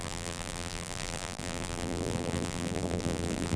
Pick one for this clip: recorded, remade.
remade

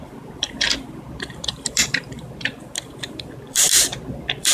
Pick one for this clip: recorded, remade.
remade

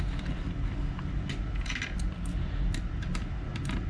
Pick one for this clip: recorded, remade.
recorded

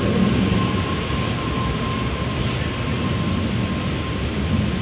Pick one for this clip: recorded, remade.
recorded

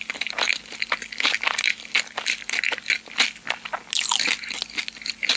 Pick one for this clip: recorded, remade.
recorded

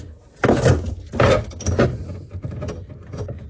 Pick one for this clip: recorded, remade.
recorded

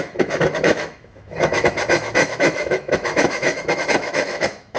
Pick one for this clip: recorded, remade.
remade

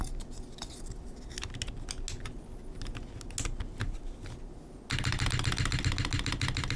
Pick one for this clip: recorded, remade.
recorded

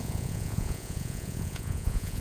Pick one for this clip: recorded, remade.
remade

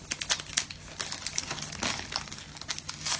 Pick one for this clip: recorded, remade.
recorded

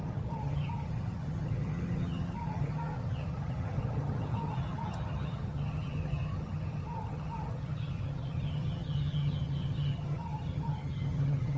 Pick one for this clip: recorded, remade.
remade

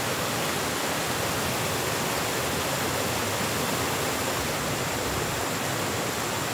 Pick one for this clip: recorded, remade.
recorded